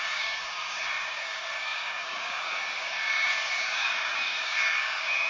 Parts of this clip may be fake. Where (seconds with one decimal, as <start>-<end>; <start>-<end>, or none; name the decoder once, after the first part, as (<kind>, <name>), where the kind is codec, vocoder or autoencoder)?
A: 0.0-5.3 (codec, DAC)